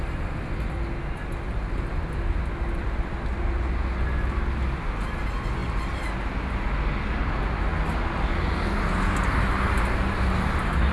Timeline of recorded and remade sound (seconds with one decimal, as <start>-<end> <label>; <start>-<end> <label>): 0.0-10.9 recorded